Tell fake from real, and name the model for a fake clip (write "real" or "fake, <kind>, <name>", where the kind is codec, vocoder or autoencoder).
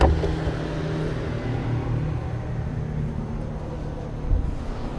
real